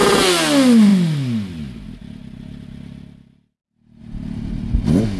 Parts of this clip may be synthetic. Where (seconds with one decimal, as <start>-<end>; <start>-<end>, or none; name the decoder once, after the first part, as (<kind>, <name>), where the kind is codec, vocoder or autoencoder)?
none